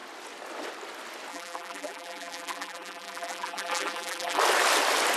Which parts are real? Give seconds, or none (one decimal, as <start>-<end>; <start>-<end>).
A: 0.0-1.3; 4.4-5.2